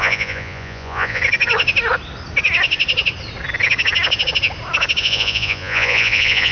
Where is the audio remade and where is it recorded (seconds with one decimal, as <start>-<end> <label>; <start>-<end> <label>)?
0.0-1.2 remade; 1.2-5.0 recorded; 5.0-6.5 remade